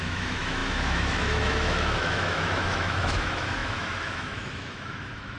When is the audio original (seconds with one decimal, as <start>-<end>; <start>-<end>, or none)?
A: none